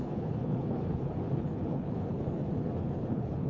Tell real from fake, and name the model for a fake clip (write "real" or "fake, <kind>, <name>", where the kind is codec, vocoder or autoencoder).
fake, codec, HILCodec